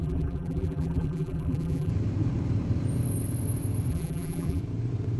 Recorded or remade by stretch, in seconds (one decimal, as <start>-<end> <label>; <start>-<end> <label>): 0.0-1.9 remade; 1.9-3.9 recorded; 3.9-4.6 remade; 4.6-5.2 recorded